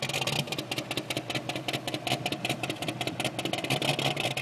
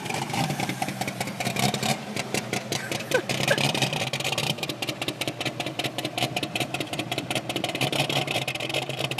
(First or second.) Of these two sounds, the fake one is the second